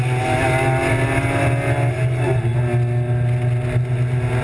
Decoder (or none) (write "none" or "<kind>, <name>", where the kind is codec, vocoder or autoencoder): none